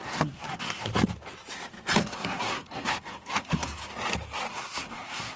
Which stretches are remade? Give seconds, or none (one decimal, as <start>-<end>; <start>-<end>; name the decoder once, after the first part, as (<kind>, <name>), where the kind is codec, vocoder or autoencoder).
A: 0.0-0.9 (codec, SNAC); 2.0-3.8; 4.5-5.4